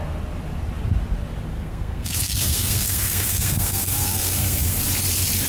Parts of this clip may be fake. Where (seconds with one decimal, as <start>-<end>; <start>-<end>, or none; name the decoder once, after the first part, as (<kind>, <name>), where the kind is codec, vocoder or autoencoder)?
1.5-4.8 (codec, SNAC)